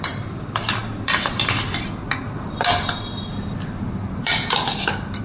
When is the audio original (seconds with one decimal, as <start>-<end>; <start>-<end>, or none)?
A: 0.8-3.9